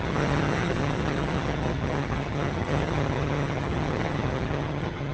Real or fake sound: fake